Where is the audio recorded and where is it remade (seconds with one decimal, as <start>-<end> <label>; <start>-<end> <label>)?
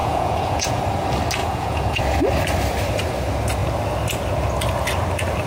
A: 0.0-0.8 remade; 0.8-1.4 recorded; 1.4-2.0 remade; 2.0-5.5 recorded